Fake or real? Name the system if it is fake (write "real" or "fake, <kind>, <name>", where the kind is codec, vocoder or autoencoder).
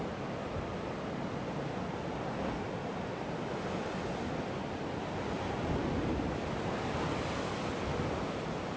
real